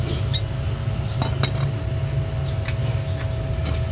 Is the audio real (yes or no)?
yes